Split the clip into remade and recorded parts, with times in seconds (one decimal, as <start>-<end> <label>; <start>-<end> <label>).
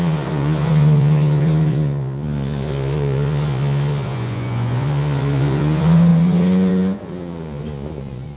0.0-8.4 remade